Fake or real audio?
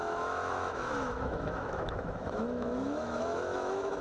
fake